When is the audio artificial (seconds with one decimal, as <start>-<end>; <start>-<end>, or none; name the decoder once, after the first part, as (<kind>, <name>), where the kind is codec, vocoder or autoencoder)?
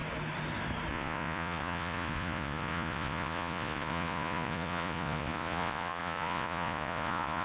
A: 0.9-7.4 (vocoder, Vocos)